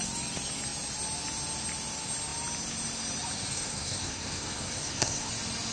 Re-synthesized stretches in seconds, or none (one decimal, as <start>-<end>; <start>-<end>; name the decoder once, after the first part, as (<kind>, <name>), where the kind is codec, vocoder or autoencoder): 3.5-5.3 (codec, SNAC)